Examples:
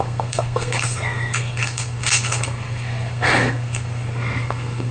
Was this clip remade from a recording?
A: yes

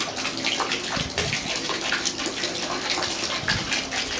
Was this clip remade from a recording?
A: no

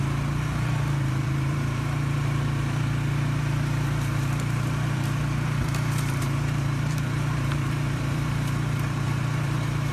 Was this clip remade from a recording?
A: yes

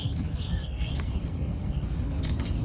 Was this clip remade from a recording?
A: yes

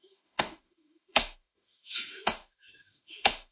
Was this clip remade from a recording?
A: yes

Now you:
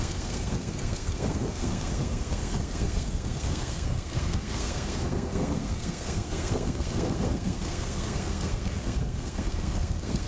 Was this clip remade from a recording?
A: yes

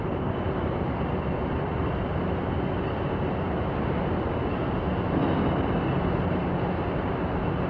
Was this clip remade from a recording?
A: no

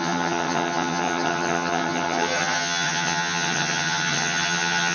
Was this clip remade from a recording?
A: yes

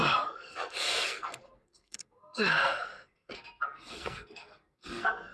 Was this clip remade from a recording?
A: yes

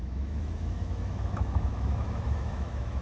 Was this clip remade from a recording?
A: yes